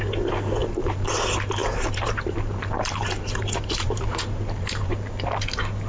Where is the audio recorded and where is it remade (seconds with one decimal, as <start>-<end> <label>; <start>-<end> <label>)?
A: 0.0-0.6 recorded; 0.6-1.2 remade; 1.2-1.6 recorded; 1.6-5.1 remade; 5.1-5.9 recorded